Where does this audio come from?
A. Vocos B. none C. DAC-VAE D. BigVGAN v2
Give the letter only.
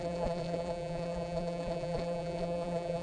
D